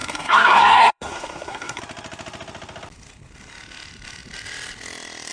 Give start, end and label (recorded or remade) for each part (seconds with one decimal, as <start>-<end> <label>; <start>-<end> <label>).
0.0-1.8 remade; 1.8-5.3 recorded